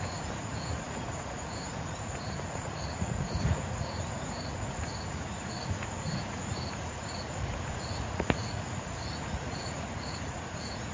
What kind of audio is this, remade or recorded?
remade